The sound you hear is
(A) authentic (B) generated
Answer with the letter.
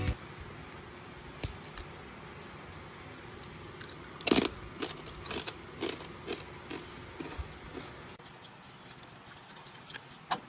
A